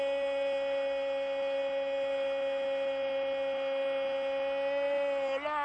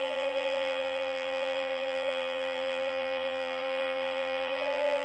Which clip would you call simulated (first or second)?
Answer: second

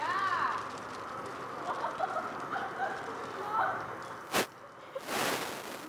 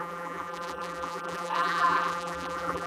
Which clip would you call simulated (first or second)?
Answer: second